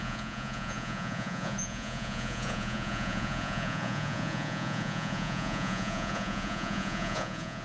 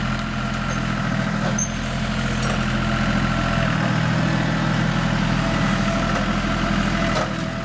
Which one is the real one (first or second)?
second